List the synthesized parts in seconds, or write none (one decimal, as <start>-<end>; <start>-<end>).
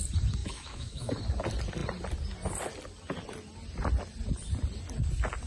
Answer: 0.4-1.1